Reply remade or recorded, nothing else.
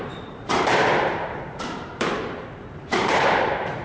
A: remade